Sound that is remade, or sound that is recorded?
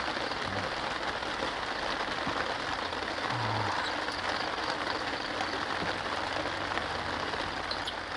recorded